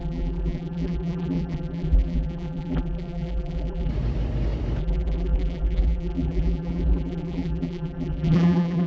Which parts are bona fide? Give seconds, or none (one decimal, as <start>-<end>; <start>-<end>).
3.9-4.8

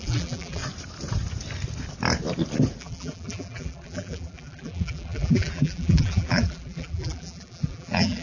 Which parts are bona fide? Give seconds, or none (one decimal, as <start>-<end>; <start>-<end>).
0.6-2.8

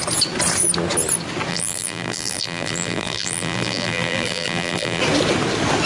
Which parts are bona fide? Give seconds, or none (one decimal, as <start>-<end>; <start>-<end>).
0.0-1.5; 5.0-5.9